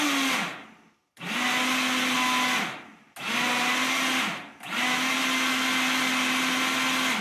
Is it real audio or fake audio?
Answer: real